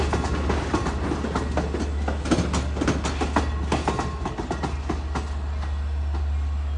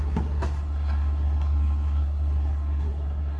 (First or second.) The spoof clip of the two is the second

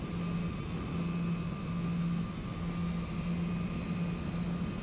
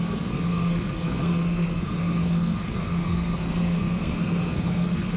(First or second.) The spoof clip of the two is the second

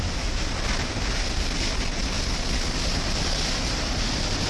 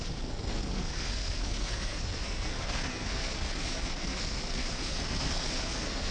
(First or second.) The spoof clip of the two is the second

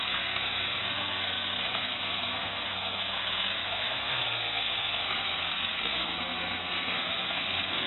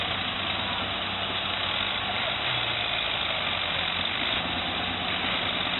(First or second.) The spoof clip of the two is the first